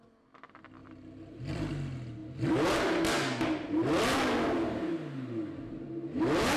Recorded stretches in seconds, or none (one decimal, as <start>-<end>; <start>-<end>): 0.0-0.8; 1.7-6.6